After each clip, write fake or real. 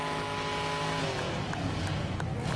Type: real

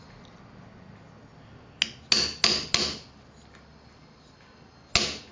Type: real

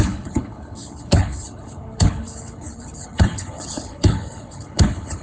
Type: fake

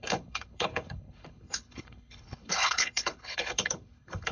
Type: fake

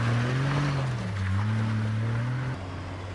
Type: real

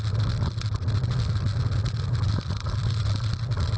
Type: real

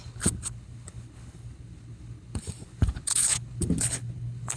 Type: fake